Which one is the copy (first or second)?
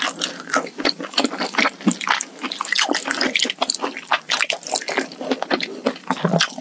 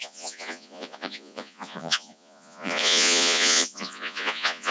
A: second